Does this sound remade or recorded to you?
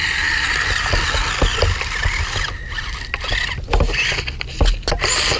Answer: recorded